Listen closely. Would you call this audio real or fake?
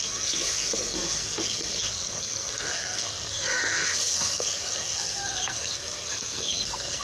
fake